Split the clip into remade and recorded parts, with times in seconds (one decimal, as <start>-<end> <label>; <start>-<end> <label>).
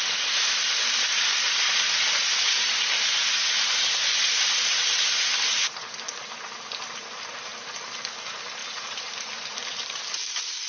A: 0.0-8.6 recorded; 8.6-10.0 remade; 10.0-10.7 recorded